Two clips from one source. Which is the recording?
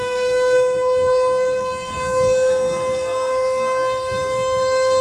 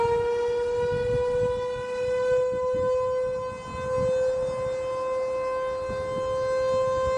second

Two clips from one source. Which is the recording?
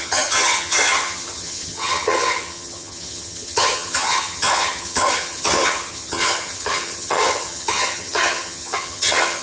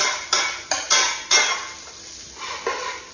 second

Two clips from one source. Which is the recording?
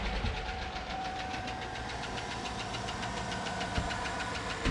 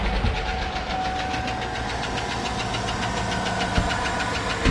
second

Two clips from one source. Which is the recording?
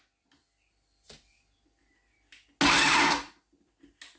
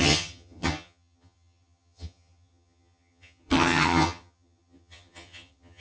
first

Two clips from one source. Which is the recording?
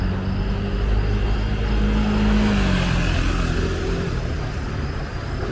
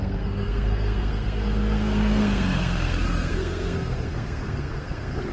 first